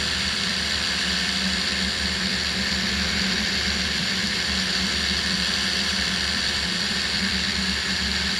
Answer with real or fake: fake